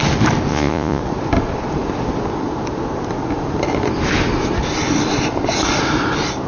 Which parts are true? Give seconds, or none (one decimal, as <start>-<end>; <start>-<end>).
0.0-0.5; 1.0-6.5